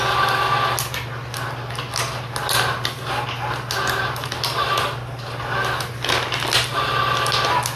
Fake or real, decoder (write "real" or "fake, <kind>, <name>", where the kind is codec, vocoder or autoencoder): real